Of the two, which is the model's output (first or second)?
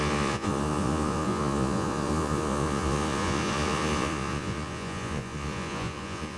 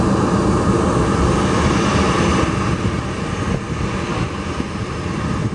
first